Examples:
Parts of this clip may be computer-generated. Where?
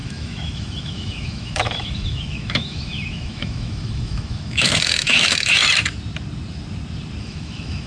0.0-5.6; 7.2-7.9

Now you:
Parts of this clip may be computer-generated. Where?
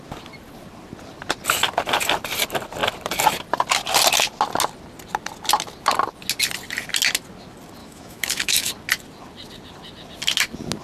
7.8-8.7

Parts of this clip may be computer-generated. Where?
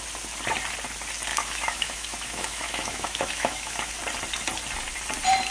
1.3-3.9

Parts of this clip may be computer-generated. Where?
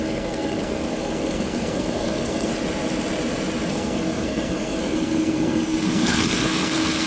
0.0-2.5; 3.7-7.1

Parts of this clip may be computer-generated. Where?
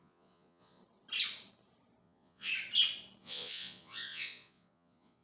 0.0-0.8; 2.0-2.5; 3.2-5.2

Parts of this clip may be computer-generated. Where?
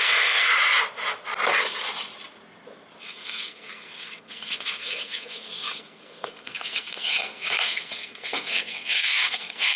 0.0-0.5; 3.0-9.8